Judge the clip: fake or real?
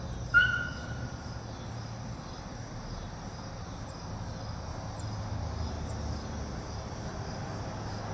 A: real